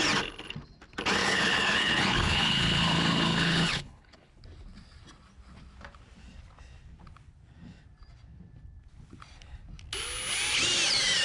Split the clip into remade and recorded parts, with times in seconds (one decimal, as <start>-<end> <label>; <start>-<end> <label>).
0.0-1.2 recorded; 1.2-4.3 remade; 4.3-11.2 recorded